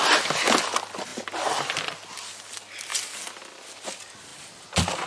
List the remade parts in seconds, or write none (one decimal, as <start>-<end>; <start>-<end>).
none